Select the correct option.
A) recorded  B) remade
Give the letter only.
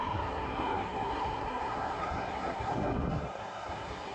B